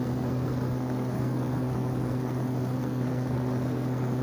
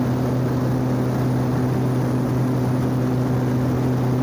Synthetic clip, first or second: first